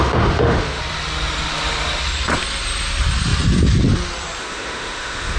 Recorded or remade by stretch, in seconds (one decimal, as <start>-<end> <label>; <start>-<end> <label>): 0.0-0.8 remade; 0.8-4.4 recorded; 4.4-5.4 remade